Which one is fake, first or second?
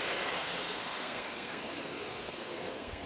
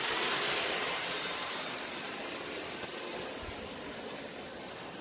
first